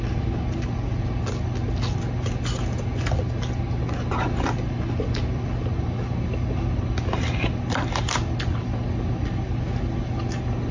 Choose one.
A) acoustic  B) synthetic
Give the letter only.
A